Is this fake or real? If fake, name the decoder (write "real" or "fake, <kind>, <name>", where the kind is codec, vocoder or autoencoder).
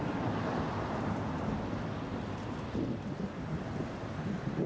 real